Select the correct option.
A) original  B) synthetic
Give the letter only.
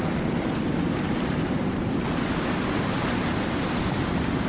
A